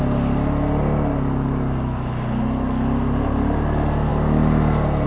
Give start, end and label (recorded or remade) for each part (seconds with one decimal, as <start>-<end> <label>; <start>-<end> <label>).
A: 0.0-5.1 recorded